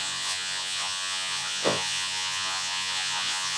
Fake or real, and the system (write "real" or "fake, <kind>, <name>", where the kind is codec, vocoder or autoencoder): fake, vocoder, Vocos